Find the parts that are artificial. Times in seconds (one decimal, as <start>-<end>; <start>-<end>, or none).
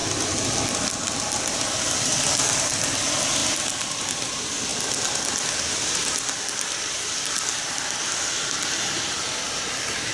none